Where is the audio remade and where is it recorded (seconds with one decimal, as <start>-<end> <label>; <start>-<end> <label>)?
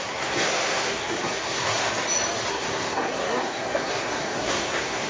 0.0-1.8 remade; 1.8-2.5 recorded; 2.5-5.1 remade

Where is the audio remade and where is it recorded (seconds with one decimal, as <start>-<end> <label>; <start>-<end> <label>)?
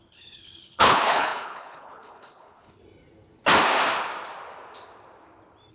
0.0-2.8 remade; 2.8-5.7 recorded